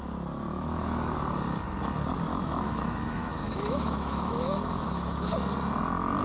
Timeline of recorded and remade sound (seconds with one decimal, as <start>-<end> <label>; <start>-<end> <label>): 0.0-0.5 recorded; 0.5-1.2 remade; 1.2-2.3 recorded; 2.3-5.3 remade; 5.3-6.2 recorded